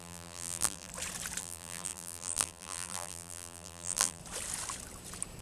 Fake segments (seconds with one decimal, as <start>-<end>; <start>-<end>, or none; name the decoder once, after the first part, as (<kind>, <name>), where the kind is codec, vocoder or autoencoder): 0.0-0.9 (vocoder, BigVGAN v2); 1.4-4.2

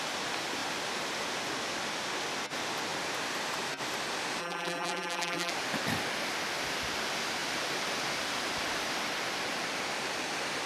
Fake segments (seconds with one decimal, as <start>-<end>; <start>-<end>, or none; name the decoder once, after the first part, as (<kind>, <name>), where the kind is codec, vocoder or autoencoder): 4.4-5.5 (vocoder, BigVGAN v2)

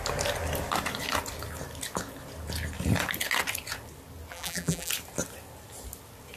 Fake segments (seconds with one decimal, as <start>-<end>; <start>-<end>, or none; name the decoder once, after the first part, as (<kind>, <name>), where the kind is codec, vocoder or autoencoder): 4.3-4.9 (vocoder, BigVGAN v2)

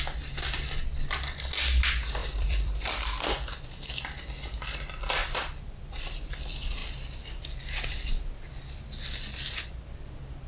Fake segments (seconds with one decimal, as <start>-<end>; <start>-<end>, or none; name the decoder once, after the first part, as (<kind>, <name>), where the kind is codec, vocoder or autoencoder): 2.2-3.9 (vocoder, BigVGAN v2); 5.2-6.2; 6.8-7.8

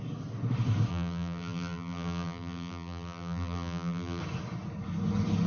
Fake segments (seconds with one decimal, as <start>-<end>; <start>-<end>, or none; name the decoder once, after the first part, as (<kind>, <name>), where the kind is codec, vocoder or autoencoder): 0.9-4.2 (vocoder, BigVGAN v2)

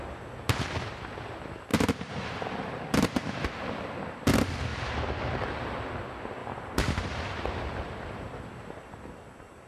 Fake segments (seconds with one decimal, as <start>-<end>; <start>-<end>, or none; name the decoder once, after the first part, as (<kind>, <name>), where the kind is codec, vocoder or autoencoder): 1.7-2.8 (vocoder, BigVGAN v2); 4.7-5.9; 6.4-9.7

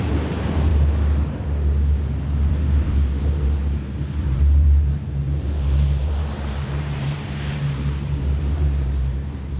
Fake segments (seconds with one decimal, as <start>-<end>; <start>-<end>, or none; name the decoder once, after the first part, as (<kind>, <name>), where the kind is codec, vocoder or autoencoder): 0.0-0.7 (vocoder, BigVGAN v2); 2.5-3.6; 4.2-9.6